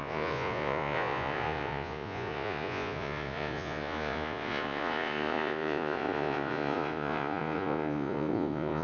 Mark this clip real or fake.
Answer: fake